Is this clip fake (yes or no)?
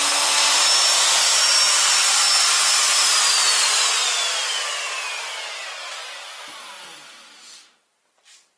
no